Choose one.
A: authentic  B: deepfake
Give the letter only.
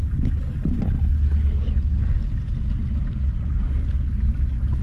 A